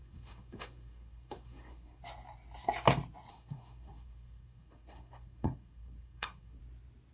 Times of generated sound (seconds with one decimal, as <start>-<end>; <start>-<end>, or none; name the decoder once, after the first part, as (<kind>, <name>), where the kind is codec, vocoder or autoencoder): 0.0-2.0 (codec, SNAC); 3.3-6.6